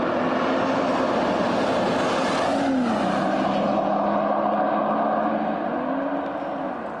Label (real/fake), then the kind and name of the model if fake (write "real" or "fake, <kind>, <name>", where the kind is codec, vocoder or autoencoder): real